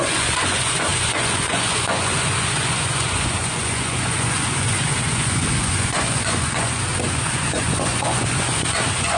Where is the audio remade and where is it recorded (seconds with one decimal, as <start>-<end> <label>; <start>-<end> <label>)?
0.0-9.2 remade